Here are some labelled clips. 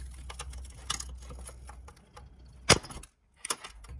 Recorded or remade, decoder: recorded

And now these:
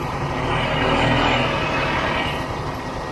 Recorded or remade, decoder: recorded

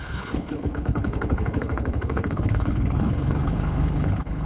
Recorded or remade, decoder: remade, codec, HILCodec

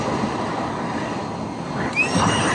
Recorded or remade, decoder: recorded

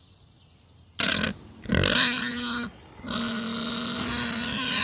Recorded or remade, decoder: recorded